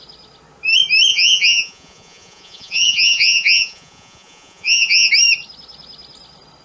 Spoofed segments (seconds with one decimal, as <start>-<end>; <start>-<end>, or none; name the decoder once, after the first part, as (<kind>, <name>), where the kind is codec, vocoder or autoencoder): 1.1-5.1 (vocoder, Vocos)